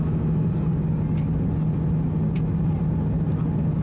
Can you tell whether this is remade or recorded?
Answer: recorded